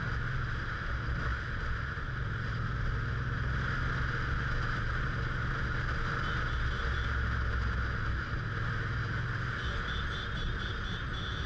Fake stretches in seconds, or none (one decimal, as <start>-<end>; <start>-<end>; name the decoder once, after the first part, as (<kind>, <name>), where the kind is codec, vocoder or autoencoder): none